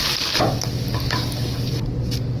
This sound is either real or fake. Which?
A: real